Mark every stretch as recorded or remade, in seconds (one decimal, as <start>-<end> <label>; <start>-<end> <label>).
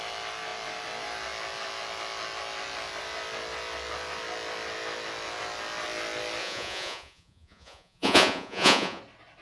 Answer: 0.0-6.4 recorded; 6.4-9.0 remade; 9.0-9.4 recorded